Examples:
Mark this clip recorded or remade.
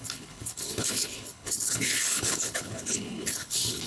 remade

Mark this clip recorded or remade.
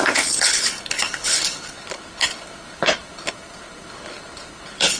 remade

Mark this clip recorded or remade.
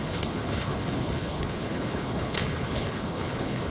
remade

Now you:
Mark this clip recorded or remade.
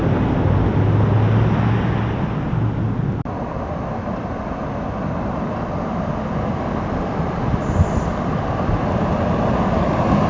recorded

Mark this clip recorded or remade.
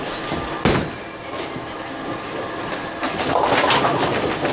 recorded